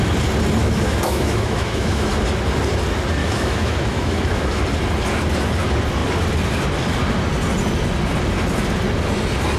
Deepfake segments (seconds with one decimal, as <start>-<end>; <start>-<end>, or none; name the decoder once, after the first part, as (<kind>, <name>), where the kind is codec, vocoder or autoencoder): 0.6-2.1 (autoencoder, DAC-VAE); 3.2-4.6